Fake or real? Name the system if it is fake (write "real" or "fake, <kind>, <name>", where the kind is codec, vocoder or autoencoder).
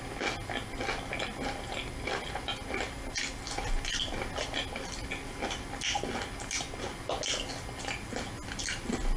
real